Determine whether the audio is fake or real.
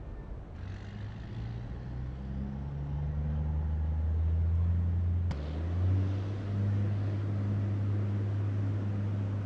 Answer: real